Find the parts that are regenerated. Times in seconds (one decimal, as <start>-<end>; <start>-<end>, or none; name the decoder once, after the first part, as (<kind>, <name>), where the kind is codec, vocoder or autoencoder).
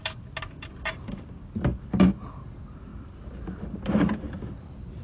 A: none